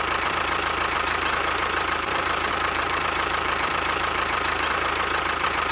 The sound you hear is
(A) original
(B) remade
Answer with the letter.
B